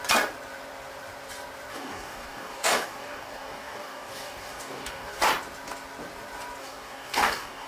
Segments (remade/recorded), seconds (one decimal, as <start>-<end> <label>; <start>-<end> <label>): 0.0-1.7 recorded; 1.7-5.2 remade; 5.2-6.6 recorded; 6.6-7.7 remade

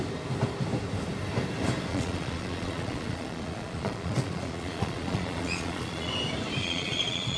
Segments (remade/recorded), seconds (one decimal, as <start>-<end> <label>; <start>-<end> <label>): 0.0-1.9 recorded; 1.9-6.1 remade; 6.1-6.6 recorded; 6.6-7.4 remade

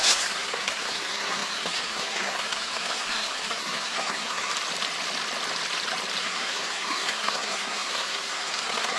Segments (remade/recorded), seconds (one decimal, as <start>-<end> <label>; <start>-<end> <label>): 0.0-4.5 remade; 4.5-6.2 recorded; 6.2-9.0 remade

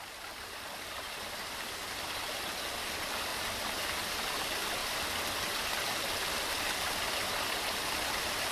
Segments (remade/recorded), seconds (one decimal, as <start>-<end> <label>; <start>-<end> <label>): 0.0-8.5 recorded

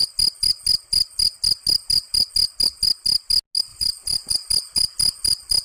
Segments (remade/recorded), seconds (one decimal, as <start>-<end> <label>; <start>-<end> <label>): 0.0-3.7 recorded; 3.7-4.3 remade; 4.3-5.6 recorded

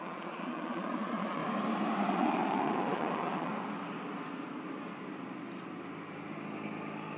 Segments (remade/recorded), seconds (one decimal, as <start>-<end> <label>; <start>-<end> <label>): 0.0-1.4 remade; 1.4-2.1 recorded; 2.1-3.5 remade; 3.5-7.2 recorded